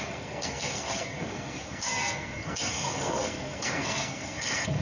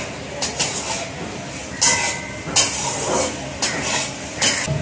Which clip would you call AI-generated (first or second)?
first